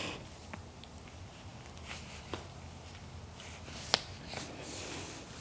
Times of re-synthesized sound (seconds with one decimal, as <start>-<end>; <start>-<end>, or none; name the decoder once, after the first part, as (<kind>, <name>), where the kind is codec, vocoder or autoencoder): 1.5-2.2 (vocoder, BigVGAN v2)